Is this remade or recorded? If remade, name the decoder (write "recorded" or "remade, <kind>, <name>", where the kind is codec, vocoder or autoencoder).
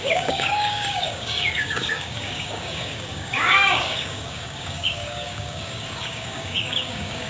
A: remade, codec, DAC